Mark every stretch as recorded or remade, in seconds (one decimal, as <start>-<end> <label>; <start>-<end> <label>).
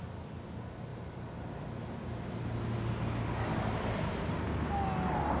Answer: 0.0-5.4 recorded